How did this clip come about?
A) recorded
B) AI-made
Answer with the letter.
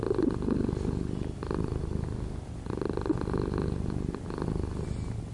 A